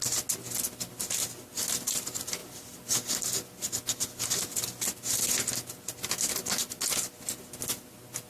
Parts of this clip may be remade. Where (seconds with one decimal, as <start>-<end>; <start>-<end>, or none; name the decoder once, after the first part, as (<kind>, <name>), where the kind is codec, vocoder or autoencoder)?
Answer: none